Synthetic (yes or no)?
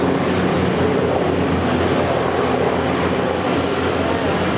no